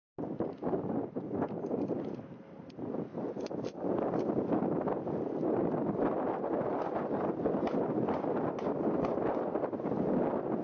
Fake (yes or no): no